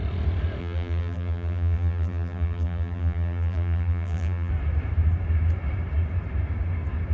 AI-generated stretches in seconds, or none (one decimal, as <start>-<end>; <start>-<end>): 0.6-4.5